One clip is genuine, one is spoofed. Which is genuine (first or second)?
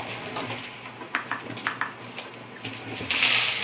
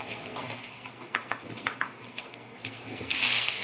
first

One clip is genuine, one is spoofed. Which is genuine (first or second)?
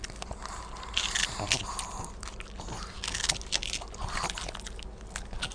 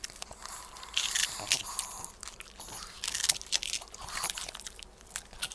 first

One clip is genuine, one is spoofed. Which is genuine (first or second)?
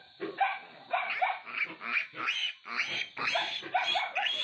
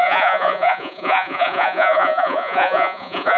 first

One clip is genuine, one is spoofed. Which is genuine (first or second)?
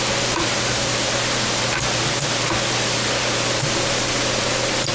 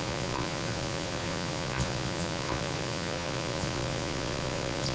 first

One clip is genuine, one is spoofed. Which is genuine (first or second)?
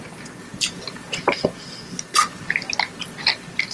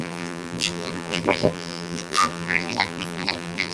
first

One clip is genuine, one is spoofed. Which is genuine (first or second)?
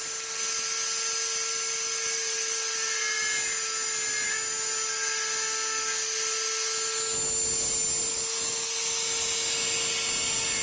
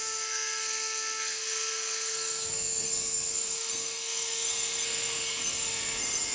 first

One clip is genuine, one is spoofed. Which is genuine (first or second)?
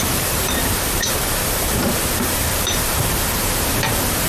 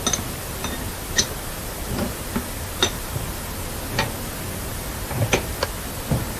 second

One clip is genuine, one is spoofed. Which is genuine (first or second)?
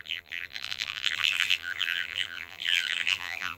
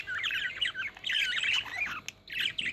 second